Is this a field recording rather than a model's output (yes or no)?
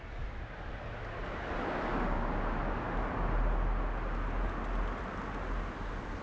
yes